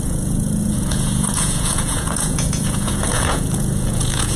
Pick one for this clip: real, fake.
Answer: fake